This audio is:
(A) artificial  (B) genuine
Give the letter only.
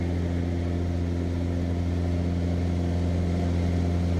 B